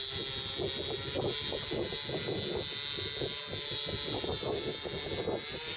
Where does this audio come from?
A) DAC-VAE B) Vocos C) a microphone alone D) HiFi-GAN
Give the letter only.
C